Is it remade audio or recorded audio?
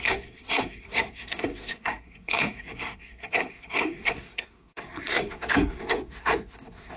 remade